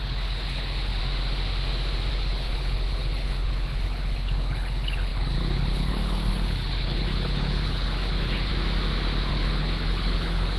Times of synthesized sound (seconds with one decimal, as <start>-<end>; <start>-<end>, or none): 0.0-1.0; 2.1-8.5; 9.3-10.6